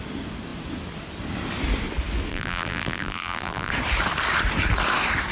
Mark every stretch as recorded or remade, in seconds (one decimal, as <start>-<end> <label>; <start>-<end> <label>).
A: 0.0-2.3 recorded; 2.3-3.7 remade; 3.7-5.3 recorded